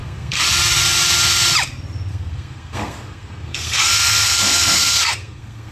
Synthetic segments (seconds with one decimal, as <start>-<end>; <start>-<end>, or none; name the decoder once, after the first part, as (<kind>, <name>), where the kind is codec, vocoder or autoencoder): 0.0-0.8 (codec, SNAC); 2.1-5.7